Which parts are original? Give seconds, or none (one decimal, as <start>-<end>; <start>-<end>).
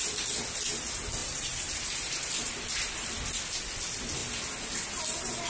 0.0-1.2; 2.6-5.5